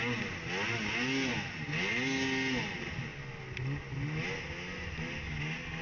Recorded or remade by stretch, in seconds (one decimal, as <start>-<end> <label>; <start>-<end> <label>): 0.0-5.8 recorded